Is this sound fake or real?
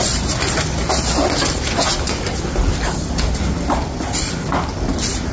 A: real